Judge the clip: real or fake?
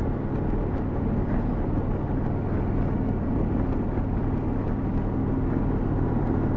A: real